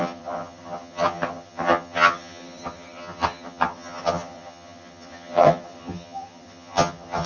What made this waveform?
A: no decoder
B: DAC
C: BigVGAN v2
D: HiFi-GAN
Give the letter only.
D